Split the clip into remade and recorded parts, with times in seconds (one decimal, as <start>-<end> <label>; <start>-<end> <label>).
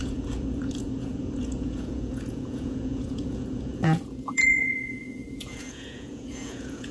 0.0-6.9 remade